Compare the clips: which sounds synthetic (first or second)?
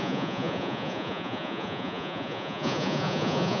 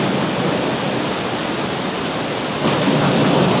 first